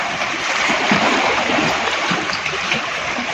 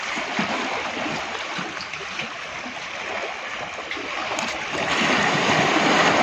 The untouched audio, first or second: second